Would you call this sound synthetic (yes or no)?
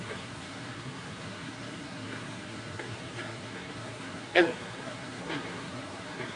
yes